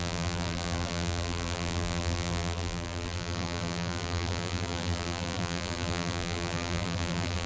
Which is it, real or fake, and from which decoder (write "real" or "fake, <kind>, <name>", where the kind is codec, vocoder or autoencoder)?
fake, vocoder, BigVGAN v2